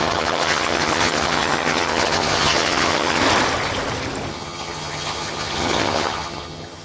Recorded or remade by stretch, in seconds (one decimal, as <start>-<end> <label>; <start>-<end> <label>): 0.0-3.2 remade; 3.2-4.3 recorded; 4.3-6.8 remade